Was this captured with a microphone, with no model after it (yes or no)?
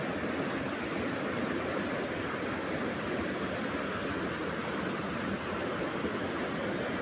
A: yes